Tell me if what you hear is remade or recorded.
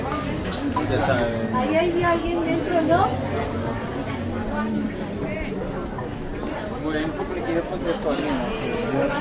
recorded